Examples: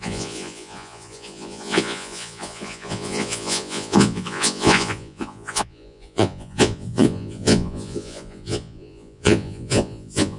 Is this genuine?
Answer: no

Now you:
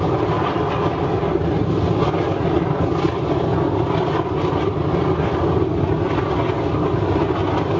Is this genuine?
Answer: yes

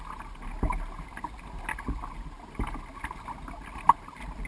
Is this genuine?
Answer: yes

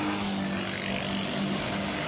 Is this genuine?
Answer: yes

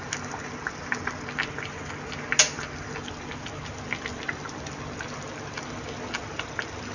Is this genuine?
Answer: yes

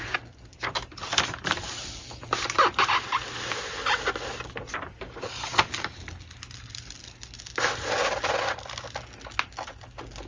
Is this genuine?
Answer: yes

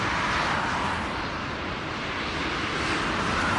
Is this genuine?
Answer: yes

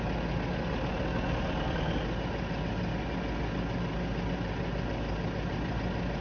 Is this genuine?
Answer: yes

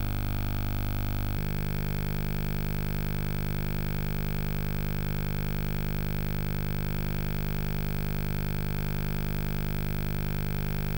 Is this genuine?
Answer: yes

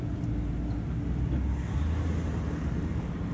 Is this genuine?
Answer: yes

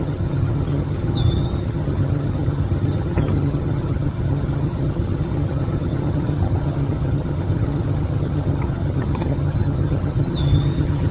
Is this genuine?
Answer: no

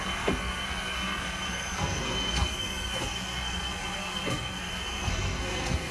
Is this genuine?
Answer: no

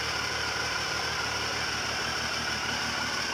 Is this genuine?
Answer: no